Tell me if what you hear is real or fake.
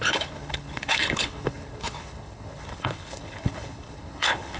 fake